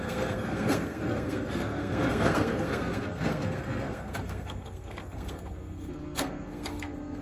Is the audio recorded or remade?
remade